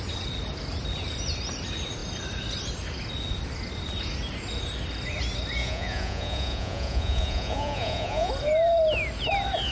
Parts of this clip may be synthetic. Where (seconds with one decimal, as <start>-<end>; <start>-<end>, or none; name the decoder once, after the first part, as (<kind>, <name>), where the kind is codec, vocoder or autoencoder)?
5.6-8.3 (vocoder, Vocos)